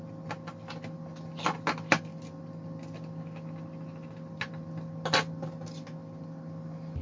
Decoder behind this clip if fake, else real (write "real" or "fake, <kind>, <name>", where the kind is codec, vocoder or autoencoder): real